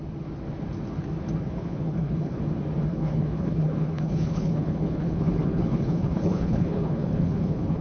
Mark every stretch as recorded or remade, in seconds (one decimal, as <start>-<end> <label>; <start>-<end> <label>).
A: 0.0-1.6 recorded; 1.6-2.4 remade; 2.4-2.9 recorded; 2.9-7.8 remade